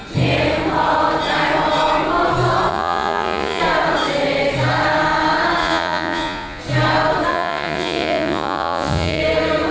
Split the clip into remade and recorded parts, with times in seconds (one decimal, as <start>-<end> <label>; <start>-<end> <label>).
0.0-2.7 recorded; 2.7-3.6 remade; 3.6-5.6 recorded; 5.6-6.6 remade; 6.6-7.3 recorded; 7.3-9.2 remade; 9.2-9.7 recorded